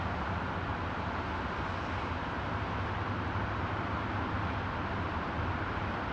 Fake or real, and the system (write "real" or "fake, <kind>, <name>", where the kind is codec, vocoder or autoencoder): real